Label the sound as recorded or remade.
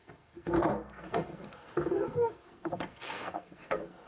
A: remade